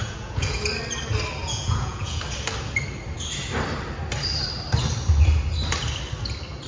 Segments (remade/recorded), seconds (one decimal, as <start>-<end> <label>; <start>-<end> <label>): 0.0-0.7 remade; 0.7-1.4 recorded; 1.4-2.2 remade; 2.2-6.7 recorded